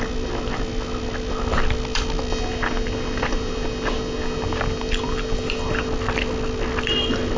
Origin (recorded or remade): recorded